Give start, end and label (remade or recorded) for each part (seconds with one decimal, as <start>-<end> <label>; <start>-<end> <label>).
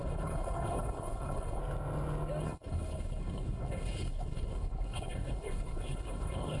0.0-1.6 remade; 1.6-2.4 recorded; 2.4-6.6 remade